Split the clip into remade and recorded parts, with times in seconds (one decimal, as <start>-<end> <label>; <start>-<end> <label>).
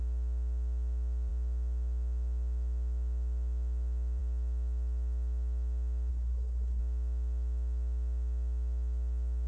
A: 0.0-6.1 recorded; 6.1-6.8 remade; 6.8-9.5 recorded